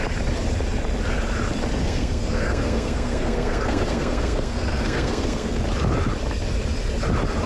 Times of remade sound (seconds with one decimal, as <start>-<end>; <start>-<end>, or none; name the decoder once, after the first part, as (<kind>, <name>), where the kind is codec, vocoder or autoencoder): 1.8-5.6 (codec, SNAC)